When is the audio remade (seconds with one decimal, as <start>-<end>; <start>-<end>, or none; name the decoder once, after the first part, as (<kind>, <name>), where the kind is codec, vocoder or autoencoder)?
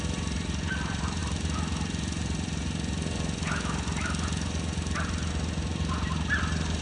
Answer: none